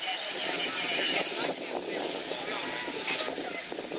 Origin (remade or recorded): recorded